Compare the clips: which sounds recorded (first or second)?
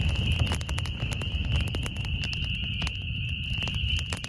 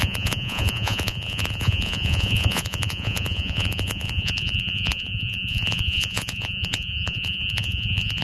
first